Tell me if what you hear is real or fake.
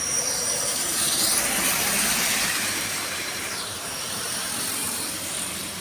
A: fake